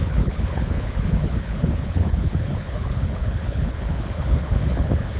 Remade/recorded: remade